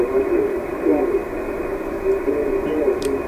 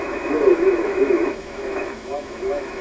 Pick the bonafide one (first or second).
first